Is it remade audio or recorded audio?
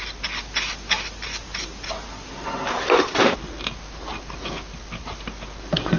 recorded